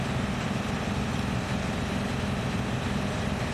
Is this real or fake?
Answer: real